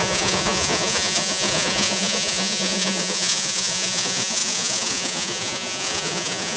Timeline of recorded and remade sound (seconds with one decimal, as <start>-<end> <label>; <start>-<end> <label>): 0.0-6.6 remade